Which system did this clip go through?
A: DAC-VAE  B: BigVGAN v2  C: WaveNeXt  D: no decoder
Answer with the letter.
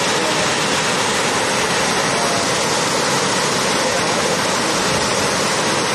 D